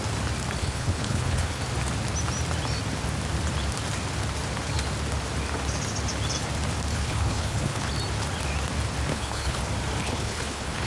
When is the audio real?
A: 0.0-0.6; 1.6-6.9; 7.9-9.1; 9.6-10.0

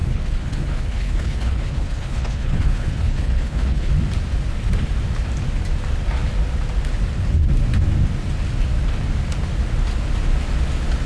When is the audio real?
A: 3.9-11.1

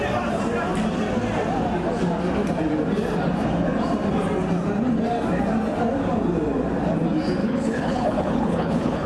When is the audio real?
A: 0.0-7.4

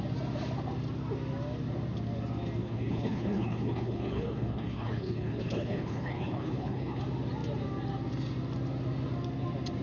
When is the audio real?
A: 0.0-2.6; 7.0-9.8

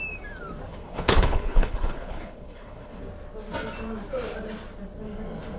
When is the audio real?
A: 0.0-0.7; 3.0-5.6

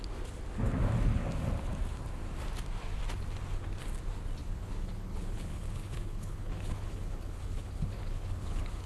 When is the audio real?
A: 0.0-4.4